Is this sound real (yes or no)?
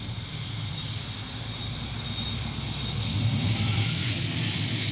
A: yes